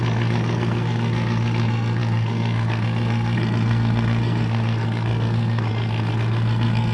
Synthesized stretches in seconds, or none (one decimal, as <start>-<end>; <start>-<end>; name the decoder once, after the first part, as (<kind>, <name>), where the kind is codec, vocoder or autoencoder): 0.0-6.9 (codec, SNAC)